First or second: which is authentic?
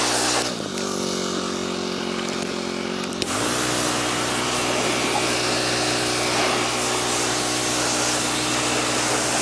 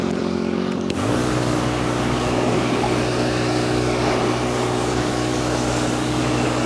first